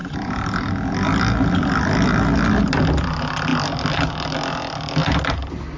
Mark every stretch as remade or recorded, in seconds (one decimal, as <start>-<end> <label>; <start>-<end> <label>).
0.0-5.8 recorded